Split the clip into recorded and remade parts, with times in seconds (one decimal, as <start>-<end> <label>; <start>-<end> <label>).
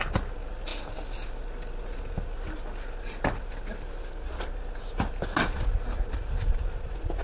0.0-7.2 recorded